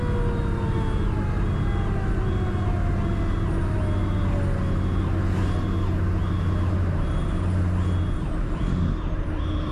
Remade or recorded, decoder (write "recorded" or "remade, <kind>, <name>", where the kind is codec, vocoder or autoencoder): recorded